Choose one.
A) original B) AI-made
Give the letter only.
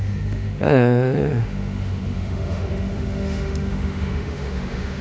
B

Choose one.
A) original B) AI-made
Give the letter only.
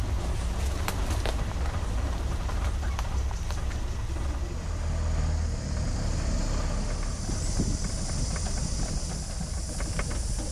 A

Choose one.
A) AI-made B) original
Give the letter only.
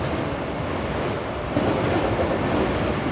B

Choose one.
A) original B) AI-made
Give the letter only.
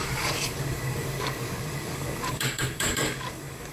B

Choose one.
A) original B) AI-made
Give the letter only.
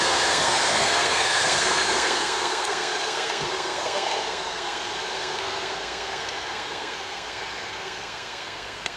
B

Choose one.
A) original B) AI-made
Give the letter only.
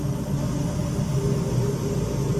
A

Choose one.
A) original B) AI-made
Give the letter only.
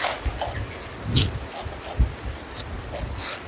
A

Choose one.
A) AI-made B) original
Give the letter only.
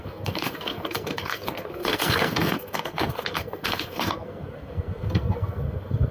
A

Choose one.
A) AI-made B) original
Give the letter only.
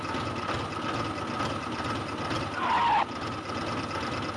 B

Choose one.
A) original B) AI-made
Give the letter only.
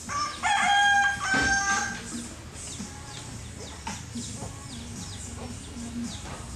A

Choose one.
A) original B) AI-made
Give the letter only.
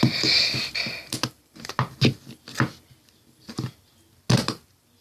A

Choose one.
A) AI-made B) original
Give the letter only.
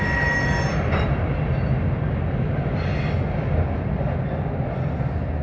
B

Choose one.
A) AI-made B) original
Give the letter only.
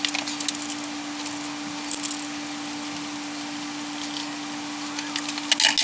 B